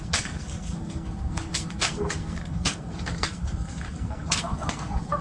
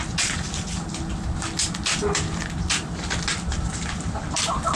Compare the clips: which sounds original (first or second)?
second